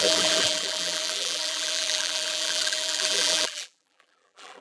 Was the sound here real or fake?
fake